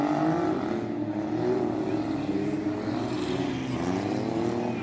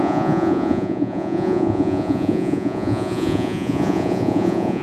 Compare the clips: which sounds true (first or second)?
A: first